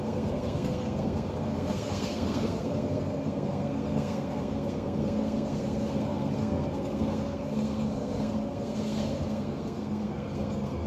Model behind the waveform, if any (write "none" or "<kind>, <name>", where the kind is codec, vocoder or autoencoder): codec, SNAC